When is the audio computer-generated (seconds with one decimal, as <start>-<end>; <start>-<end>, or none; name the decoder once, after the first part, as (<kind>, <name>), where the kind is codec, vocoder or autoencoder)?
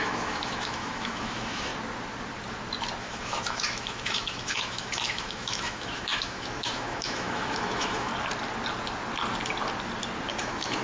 0.0-1.7 (autoencoder, DAC-VAE); 3.0-8.1; 10.4-10.8